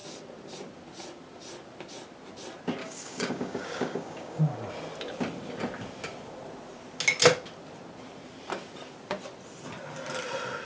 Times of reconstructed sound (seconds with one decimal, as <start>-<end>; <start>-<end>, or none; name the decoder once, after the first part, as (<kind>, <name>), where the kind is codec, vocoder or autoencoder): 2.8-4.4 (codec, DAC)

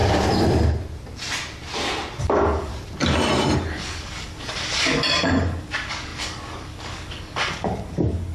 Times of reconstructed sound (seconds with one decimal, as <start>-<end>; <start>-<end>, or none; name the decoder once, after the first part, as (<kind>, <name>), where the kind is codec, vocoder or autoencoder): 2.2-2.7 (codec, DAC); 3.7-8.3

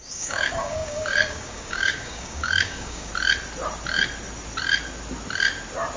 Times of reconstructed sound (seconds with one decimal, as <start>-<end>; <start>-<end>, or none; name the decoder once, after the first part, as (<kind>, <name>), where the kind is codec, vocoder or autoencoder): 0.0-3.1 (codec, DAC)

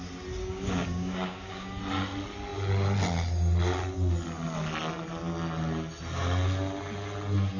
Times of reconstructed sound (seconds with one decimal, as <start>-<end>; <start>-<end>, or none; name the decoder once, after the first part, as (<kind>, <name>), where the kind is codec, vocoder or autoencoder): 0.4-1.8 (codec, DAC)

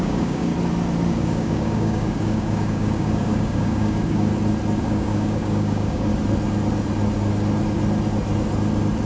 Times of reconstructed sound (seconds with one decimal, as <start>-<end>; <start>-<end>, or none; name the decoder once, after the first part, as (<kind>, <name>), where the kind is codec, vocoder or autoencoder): 0.0-0.5 (codec, DAC); 1.1-4.3; 4.8-6.1